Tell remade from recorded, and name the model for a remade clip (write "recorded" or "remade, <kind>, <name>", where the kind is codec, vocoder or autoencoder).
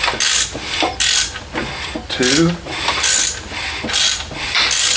recorded